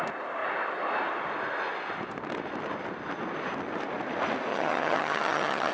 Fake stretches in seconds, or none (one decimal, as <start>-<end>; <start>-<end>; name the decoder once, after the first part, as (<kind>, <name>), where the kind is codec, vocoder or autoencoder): 4.5-5.7 (vocoder, HiFi-GAN)